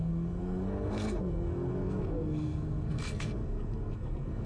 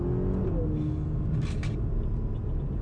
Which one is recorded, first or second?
second